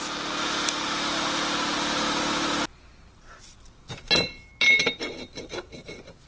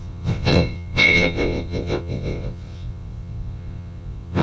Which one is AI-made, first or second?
second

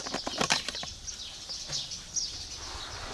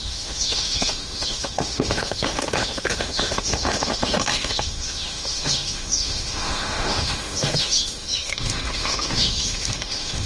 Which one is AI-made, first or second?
second